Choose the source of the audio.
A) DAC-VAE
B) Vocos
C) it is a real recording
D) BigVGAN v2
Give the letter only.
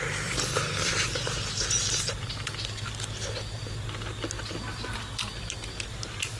C